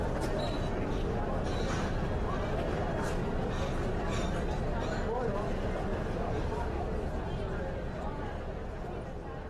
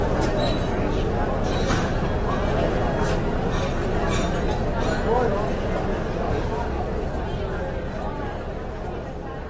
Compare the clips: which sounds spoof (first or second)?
first